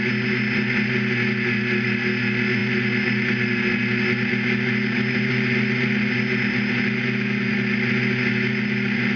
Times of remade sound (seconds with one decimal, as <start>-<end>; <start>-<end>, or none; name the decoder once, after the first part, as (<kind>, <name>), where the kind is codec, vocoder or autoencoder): none